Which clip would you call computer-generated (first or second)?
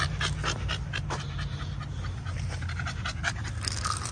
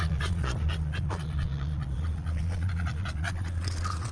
second